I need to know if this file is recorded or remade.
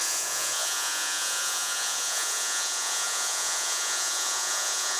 remade